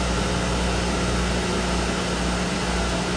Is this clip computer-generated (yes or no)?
no